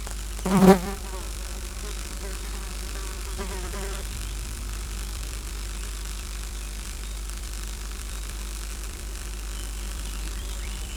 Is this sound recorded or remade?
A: remade